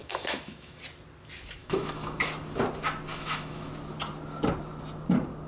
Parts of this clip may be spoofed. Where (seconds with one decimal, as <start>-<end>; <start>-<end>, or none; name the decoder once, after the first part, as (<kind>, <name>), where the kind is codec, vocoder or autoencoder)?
0.0-0.8 (autoencoder, DAC-VAE); 1.6-2.2; 3.1-3.7